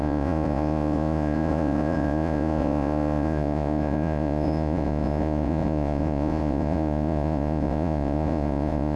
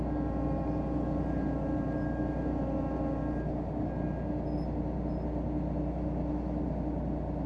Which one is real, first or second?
second